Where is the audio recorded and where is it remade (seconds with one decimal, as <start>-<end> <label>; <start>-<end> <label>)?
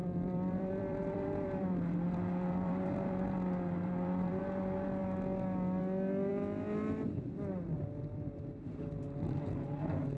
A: 0.0-4.4 remade; 4.4-10.2 recorded